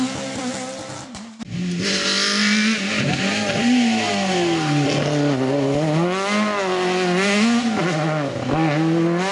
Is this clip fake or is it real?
real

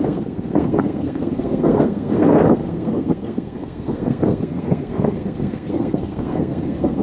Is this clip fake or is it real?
fake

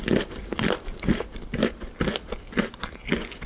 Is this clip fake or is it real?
real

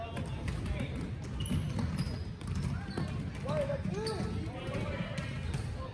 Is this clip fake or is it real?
real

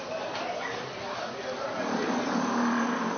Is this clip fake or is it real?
fake